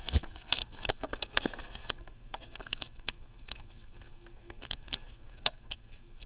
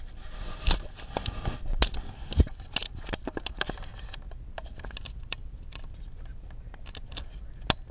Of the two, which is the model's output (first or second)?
first